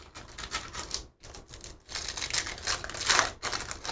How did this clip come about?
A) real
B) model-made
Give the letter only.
A